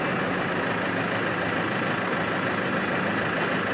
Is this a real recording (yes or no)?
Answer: yes